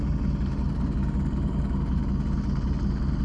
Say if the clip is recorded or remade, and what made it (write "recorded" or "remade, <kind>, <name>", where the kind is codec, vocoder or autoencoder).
recorded